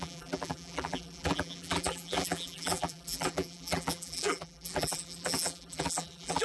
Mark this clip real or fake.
fake